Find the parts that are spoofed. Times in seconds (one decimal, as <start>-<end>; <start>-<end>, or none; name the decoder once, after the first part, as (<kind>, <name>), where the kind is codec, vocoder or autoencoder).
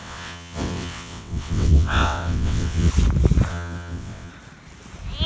0.0-2.9 (vocoder, WaveNeXt); 3.5-4.3